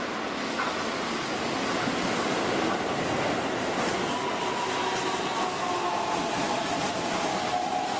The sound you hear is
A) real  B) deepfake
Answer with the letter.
A